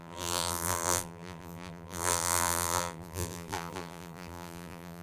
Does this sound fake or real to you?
fake